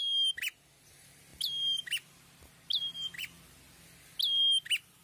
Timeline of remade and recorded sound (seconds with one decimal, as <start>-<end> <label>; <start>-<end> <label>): 0.0-5.0 recorded